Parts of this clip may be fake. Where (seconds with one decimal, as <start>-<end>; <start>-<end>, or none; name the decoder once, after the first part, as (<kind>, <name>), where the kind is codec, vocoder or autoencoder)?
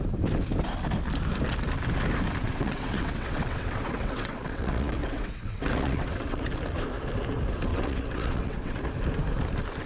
2.4-6.4 (vocoder, WaveNeXt); 7.7-8.8